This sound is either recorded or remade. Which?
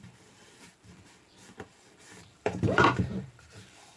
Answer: remade